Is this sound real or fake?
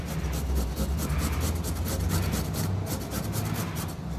real